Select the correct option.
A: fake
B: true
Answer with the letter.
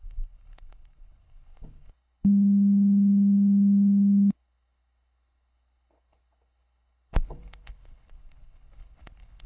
A